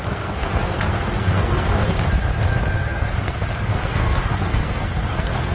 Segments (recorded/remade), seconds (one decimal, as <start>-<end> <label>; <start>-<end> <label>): 0.0-1.7 remade; 1.7-2.8 recorded; 2.8-5.5 remade